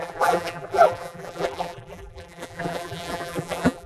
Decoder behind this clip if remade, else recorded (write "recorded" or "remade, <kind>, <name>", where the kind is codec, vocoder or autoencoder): remade, vocoder, BigVGAN v2